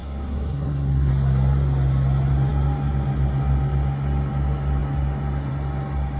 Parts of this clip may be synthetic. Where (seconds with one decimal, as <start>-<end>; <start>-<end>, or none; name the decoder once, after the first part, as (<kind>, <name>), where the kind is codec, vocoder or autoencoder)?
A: 0.0-1.1 (codec, SNAC)